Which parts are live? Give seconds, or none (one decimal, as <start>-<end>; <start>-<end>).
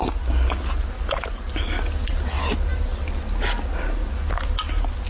0.0-5.1